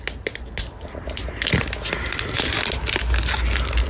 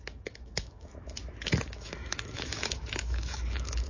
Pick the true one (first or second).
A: first